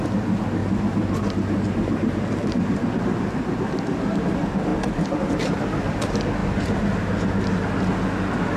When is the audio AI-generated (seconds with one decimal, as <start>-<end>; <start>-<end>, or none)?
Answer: 0.6-2.9